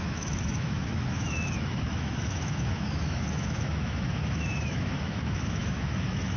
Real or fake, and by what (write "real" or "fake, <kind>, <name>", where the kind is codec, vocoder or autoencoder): fake, autoencoder, DAC-VAE